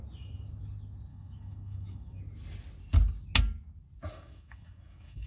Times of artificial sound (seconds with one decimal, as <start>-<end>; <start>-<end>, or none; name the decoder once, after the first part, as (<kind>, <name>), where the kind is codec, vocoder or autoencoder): 1.1-2.2 (autoencoder, DAC-VAE); 4.1-5.3